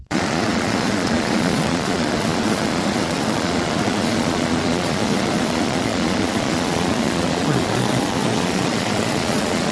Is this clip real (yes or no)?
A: no